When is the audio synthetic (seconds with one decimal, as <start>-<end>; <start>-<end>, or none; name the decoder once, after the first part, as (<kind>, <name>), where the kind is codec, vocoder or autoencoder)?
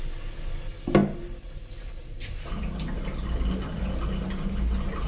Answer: none